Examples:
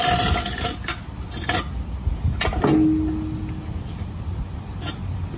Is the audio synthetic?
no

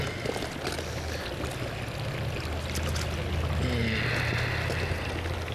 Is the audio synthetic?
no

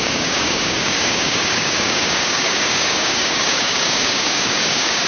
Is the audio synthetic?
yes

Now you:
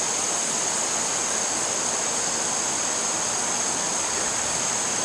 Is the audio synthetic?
no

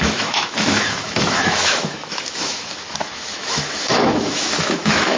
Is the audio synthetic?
yes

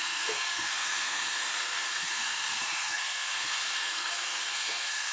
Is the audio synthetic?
yes